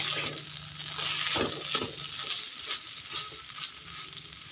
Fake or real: real